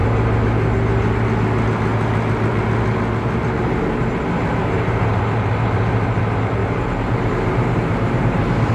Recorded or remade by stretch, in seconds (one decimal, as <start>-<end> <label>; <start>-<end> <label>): 0.0-6.6 recorded; 6.6-8.7 remade